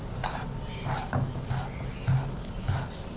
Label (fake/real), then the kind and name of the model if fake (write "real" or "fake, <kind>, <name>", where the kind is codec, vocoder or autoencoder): real